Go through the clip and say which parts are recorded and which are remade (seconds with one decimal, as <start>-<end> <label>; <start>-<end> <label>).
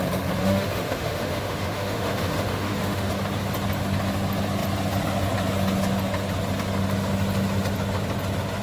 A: 0.0-0.4 recorded; 0.4-3.1 remade; 3.1-8.6 recorded